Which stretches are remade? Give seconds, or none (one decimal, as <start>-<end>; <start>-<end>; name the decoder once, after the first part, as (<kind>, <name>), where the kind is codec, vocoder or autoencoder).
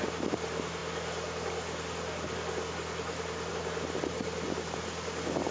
none